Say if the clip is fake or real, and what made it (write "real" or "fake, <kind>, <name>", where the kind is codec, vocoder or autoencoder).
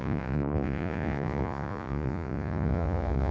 fake, vocoder, Vocos